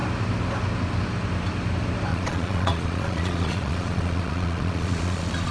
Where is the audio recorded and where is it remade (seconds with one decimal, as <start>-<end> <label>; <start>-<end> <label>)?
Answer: 0.0-2.1 recorded; 2.1-5.5 remade